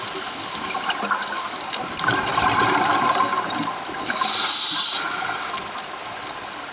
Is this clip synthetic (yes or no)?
no